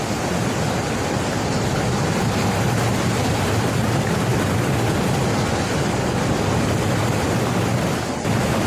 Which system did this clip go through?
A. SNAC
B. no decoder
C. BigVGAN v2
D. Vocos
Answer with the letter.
B